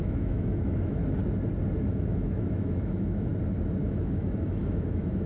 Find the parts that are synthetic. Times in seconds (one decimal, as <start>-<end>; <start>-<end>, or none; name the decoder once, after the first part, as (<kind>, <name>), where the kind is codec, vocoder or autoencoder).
0.0-1.0 (autoencoder, DAC-VAE); 1.8-3.3; 3.8-5.3